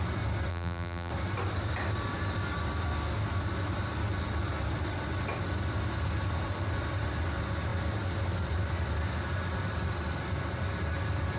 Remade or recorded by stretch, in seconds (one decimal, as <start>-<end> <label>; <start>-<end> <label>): 0.0-0.5 recorded; 0.5-1.1 remade; 1.1-11.4 recorded